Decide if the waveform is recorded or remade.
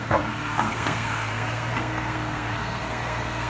remade